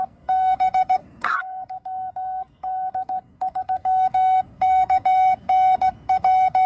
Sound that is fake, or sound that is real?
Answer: fake